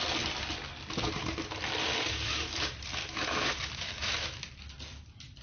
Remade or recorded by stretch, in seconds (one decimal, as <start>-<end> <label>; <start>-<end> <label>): 0.0-3.0 recorded; 3.0-4.4 remade; 4.4-5.4 recorded